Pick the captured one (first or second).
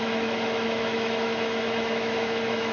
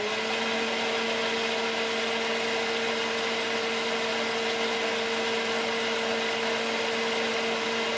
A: second